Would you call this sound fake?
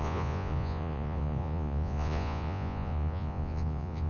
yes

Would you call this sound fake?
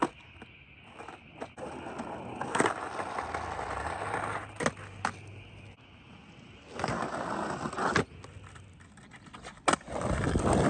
no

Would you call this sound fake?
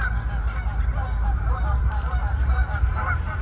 no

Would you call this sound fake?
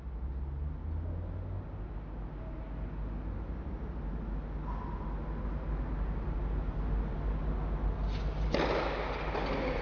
no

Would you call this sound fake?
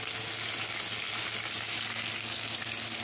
no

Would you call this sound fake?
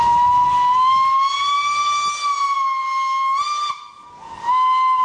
no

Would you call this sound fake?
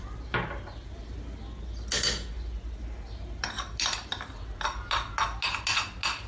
no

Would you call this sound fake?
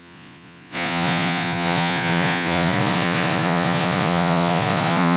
yes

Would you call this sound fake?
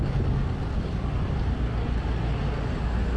no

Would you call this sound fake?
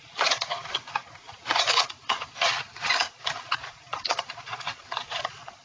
yes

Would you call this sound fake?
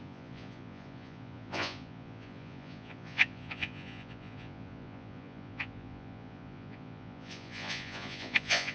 yes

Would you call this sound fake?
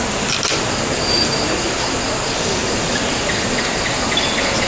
no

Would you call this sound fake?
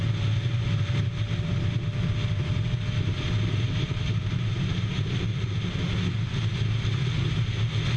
no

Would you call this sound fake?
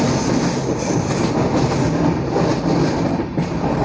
no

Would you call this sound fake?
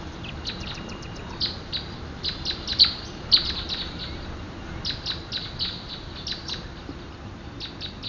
no